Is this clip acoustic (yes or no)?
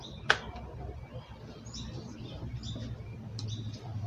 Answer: no